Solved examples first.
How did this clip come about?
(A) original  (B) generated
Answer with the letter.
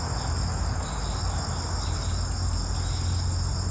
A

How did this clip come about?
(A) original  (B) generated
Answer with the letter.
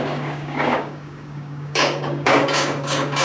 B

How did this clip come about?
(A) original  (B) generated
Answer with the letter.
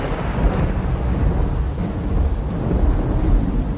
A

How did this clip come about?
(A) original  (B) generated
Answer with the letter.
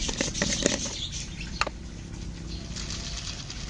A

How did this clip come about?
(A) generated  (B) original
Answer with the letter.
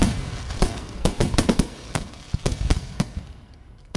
A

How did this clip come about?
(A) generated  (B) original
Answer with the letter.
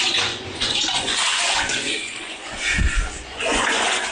A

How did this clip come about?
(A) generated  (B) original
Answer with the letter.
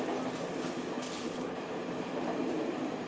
B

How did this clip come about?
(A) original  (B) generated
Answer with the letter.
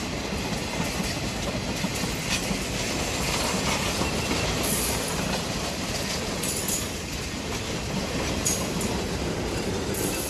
A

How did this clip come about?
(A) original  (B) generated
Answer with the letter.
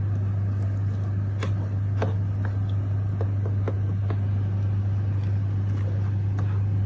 A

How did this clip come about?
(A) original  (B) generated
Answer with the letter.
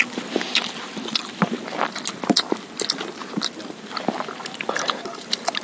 A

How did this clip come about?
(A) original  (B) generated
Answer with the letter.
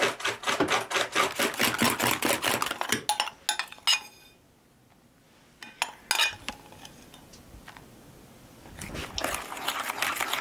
A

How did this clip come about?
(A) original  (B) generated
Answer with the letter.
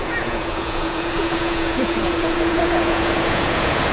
B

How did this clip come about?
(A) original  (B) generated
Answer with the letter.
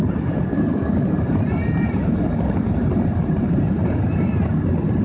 A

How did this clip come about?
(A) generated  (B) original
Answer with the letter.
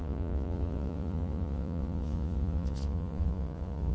A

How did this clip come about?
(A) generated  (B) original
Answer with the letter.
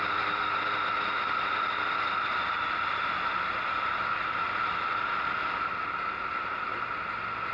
B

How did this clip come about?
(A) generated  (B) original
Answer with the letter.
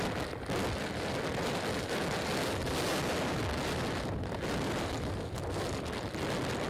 B